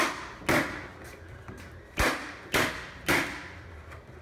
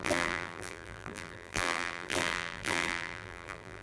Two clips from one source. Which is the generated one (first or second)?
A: second